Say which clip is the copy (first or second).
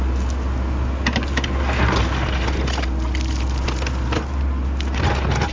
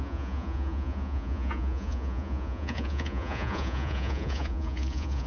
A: second